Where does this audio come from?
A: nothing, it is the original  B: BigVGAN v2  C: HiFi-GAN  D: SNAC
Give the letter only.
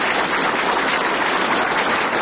A